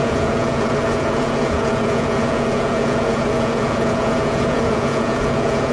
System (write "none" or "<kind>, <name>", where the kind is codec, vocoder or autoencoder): vocoder, Vocos